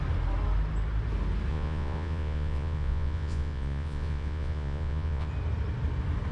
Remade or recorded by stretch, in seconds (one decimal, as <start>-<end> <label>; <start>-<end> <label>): 0.0-1.5 recorded; 1.5-5.3 remade; 5.3-6.3 recorded